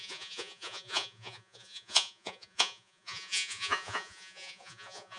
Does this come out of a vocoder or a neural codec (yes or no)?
yes